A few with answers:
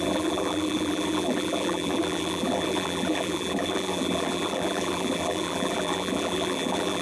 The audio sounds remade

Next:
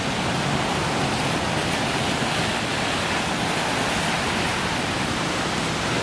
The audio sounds remade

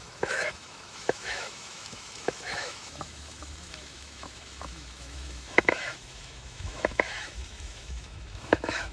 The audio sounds remade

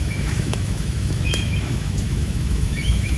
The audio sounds remade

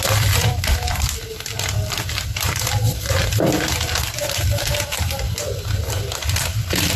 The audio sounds remade